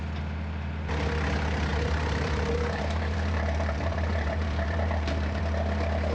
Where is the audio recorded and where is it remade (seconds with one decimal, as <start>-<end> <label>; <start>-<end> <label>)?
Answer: 0.0-1.7 recorded; 1.7-5.4 remade; 5.4-6.1 recorded